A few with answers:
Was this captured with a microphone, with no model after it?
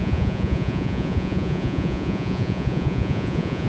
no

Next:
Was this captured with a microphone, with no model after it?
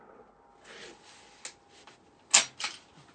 yes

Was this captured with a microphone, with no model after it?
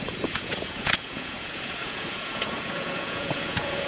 no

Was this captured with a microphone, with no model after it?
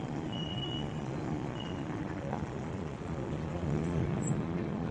no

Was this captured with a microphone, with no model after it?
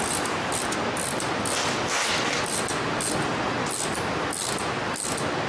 yes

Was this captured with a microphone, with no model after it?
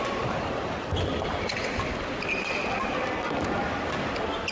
yes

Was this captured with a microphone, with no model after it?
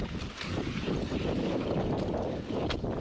yes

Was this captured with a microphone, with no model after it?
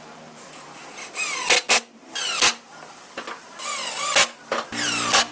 yes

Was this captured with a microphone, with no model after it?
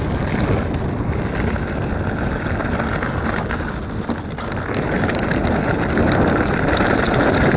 yes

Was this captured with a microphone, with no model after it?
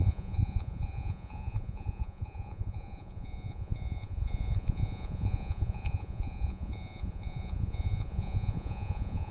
no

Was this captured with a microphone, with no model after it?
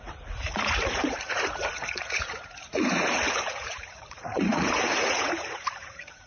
no